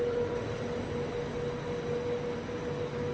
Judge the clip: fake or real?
real